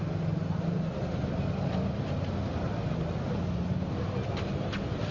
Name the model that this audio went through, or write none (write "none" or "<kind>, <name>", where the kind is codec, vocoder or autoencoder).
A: none